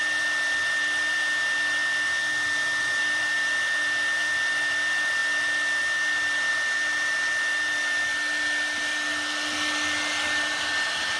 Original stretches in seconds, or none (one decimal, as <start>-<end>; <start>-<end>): 0.0-11.2